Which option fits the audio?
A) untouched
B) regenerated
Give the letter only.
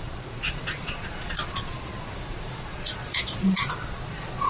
B